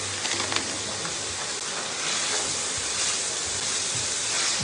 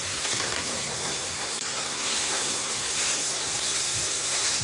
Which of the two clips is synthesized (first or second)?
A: second